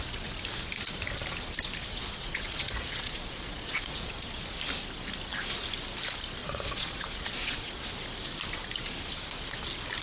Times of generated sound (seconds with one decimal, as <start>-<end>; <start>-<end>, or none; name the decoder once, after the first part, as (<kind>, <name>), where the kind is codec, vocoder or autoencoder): 1.8-4.1 (vocoder, Vocos); 6.4-7.9